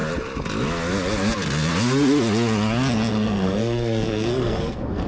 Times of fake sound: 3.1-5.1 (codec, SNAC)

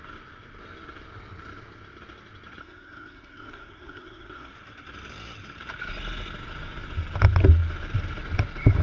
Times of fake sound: 2.6-4.5 (codec, SNAC)

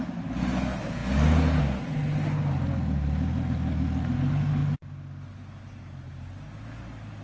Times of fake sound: none

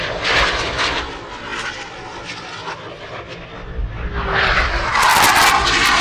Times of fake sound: none

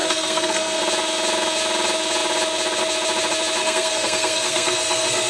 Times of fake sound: 0.0-0.8 (codec, SNAC); 3.6-5.3

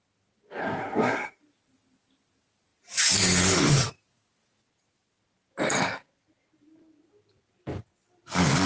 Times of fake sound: 0.6-1.4 (codec, SNAC)

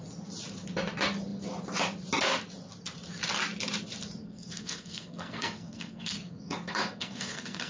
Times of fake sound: 4.2-7.7 (codec, SNAC)